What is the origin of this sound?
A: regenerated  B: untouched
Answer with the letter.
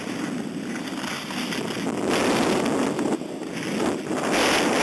B